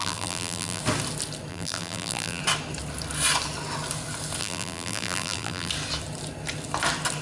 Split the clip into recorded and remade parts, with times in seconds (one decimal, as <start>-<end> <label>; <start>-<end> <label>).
0.0-0.8 remade; 0.8-1.5 recorded; 1.5-2.4 remade; 2.4-4.4 recorded; 4.4-5.7 remade; 5.7-7.2 recorded